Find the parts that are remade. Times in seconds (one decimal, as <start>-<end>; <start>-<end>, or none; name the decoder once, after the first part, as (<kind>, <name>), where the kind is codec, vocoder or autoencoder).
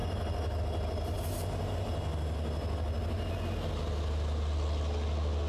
none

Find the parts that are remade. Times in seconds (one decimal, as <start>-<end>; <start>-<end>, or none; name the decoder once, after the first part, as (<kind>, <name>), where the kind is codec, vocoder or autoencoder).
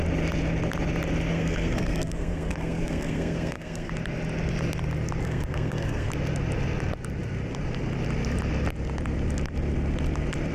1.3-3.9 (codec, SNAC); 5.2-6.1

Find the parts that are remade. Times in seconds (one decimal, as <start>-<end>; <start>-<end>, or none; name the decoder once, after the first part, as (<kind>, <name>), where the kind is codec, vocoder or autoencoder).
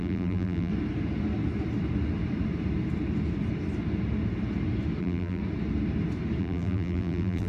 0.0-0.7 (vocoder, BigVGAN v2); 5.0-5.4; 6.4-7.5